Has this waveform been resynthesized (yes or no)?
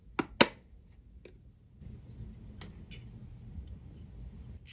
no